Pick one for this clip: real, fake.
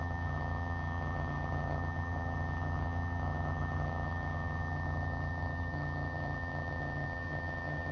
fake